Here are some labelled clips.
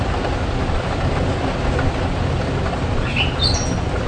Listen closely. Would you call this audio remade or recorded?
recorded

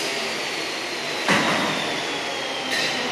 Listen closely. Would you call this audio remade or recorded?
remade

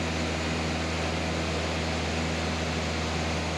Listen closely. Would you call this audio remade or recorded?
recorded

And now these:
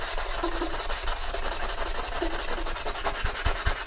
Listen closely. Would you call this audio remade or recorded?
recorded